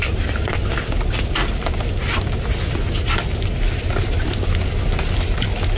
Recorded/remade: recorded